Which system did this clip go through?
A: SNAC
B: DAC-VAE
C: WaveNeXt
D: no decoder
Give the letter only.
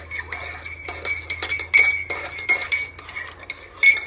D